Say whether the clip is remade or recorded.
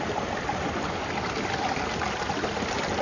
recorded